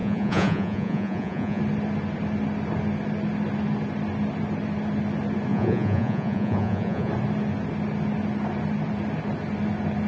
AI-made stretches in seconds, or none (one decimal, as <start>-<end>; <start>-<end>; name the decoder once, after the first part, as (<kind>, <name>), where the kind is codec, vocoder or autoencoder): 0.0-1.6 (vocoder, Vocos); 5.5-7.1